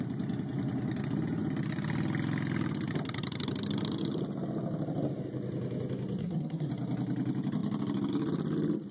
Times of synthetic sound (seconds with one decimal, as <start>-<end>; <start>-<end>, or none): 6.2-6.7